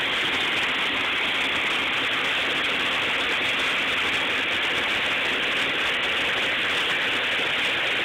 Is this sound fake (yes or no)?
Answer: no